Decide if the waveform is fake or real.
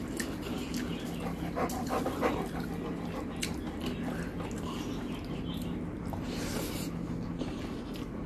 real